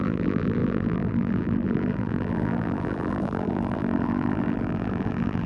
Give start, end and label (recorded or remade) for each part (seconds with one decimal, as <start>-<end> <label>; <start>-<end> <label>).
0.0-5.5 remade